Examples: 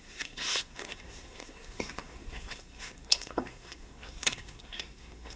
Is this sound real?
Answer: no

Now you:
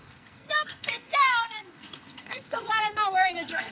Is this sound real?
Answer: no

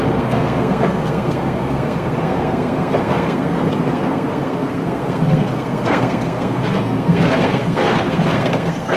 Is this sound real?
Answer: no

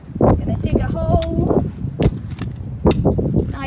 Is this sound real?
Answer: yes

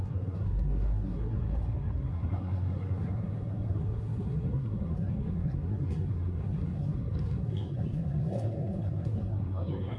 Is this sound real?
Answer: no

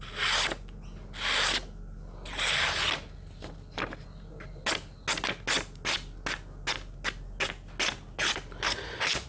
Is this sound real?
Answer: yes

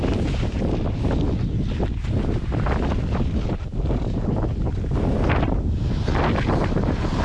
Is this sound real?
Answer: yes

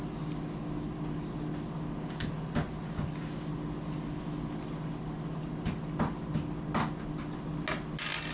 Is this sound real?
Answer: yes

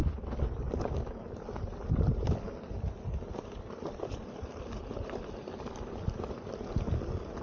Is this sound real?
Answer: yes